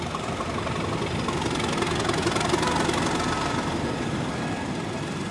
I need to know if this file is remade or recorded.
recorded